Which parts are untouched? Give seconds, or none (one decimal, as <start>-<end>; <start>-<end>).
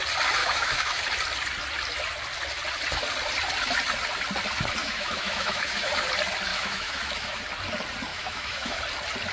0.0-0.4; 1.0-4.8; 5.9-6.5; 7.4-8.1; 8.8-9.3